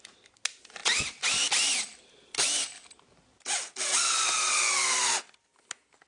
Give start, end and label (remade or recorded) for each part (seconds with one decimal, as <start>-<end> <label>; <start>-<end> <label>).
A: 0.0-6.1 recorded